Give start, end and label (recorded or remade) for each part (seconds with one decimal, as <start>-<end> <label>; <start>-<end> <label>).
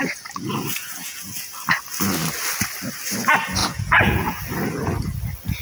0.0-0.8 recorded; 0.8-1.5 remade; 1.5-3.6 recorded; 3.6-4.4 remade; 4.4-5.6 recorded